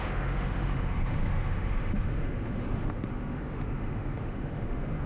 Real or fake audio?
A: fake